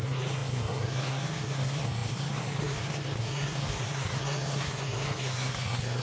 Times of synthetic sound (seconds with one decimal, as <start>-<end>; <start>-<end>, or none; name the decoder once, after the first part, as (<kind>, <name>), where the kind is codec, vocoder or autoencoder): 0.0-6.0 (codec, SNAC)